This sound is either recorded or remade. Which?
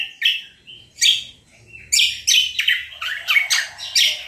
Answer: recorded